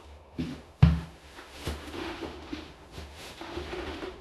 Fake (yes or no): yes